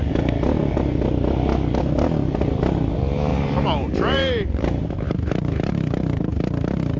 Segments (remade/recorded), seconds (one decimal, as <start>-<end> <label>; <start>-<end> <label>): 0.0-3.3 recorded; 3.3-6.2 remade; 6.2-7.0 recorded

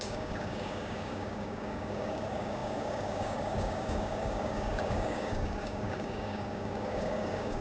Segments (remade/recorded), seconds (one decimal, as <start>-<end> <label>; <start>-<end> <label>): 0.0-7.6 remade

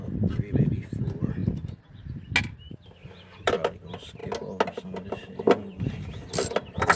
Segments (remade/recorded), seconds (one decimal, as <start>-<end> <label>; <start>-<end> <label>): 0.0-1.4 recorded; 1.4-2.1 remade; 2.1-3.0 recorded; 3.0-3.5 remade; 3.5-6.9 recorded

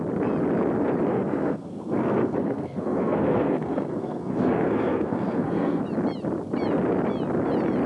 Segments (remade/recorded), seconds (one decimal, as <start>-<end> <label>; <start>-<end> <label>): 0.0-1.1 recorded; 1.1-5.8 remade; 5.8-7.9 recorded

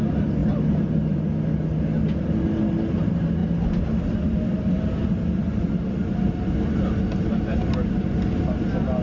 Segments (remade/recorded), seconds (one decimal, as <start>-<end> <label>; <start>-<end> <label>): 0.0-0.4 recorded; 0.4-1.2 remade; 1.2-9.0 recorded